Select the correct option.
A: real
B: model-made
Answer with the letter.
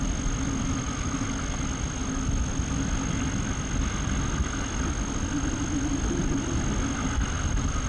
A